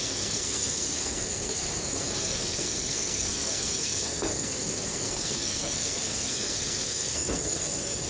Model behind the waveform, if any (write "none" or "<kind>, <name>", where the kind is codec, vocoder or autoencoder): codec, SNAC